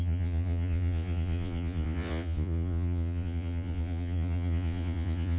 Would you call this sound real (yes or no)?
no